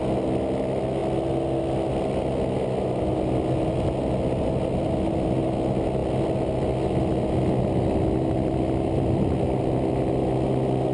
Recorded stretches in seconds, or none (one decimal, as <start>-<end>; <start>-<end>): 0.0-10.9